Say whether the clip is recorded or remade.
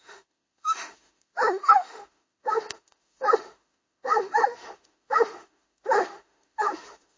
remade